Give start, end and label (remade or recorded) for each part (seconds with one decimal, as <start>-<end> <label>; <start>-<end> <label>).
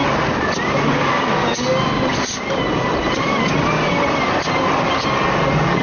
0.0-5.8 recorded